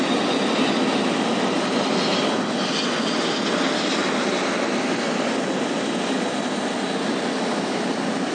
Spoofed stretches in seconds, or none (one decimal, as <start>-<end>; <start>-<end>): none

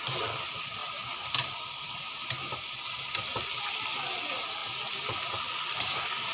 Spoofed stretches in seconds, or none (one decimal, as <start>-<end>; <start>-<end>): none

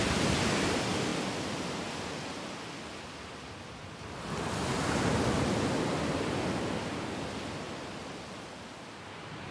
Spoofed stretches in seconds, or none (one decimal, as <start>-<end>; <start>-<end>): none